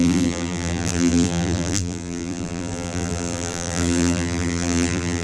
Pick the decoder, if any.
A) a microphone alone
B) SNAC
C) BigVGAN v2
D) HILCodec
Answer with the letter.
C